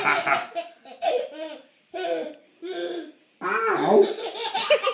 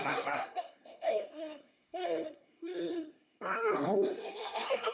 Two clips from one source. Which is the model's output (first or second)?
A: second